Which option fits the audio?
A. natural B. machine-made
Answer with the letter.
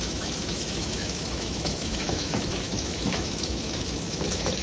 B